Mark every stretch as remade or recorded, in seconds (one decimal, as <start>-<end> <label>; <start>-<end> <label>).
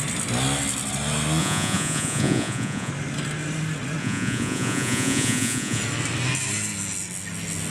0.0-1.4 recorded; 1.4-2.9 remade; 2.9-4.0 recorded; 4.0-5.8 remade; 5.8-7.7 recorded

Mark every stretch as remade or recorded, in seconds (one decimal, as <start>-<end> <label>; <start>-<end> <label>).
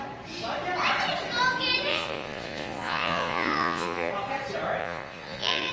0.0-1.9 recorded; 1.9-4.1 remade; 4.1-4.8 recorded; 4.8-5.7 remade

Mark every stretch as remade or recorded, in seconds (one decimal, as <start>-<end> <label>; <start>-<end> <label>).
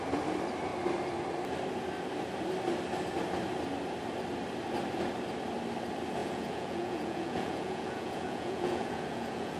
0.0-6.2 recorded; 6.2-9.6 remade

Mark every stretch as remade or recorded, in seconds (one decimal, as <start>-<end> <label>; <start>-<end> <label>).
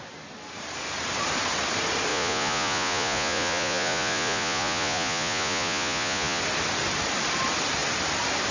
0.0-2.1 recorded; 2.1-6.4 remade; 6.4-8.5 recorded